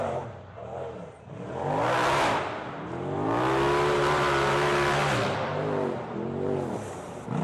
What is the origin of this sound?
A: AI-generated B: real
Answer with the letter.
B